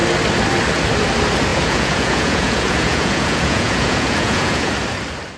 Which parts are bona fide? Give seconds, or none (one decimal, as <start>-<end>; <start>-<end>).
0.0-1.5; 4.7-5.4